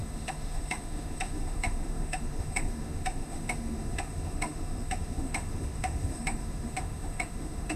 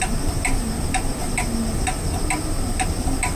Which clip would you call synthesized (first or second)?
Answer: first